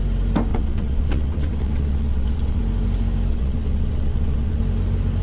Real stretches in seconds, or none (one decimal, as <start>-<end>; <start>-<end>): 0.0-0.5; 2.6-3.3; 4.6-5.2